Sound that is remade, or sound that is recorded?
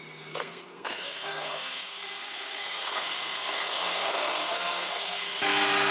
remade